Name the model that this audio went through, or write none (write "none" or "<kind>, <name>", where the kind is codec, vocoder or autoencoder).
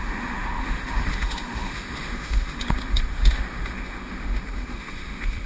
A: autoencoder, DAC-VAE